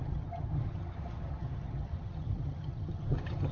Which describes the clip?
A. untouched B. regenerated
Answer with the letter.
B